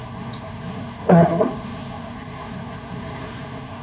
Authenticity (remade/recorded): remade